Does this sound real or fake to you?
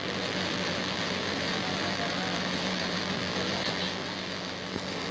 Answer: fake